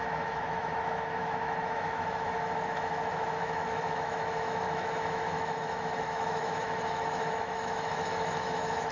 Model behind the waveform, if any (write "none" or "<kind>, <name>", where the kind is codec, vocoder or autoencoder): autoencoder, DAC-VAE